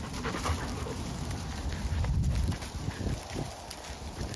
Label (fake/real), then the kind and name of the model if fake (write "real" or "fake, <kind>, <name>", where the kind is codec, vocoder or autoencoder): real